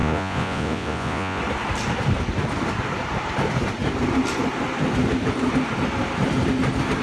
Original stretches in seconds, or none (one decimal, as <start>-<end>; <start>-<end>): 1.4-7.0